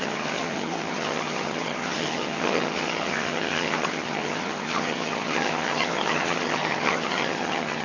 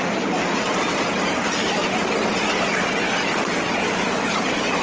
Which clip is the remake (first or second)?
first